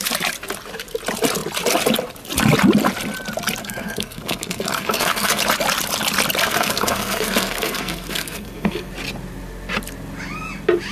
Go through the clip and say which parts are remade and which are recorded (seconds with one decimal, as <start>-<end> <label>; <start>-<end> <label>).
0.0-3.6 recorded; 3.6-5.4 remade; 5.4-6.4 recorded; 6.4-8.9 remade; 8.9-10.9 recorded